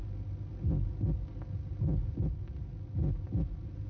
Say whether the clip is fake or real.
real